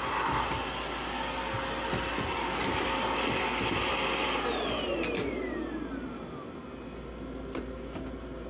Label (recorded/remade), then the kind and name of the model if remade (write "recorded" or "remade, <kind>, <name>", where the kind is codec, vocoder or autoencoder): recorded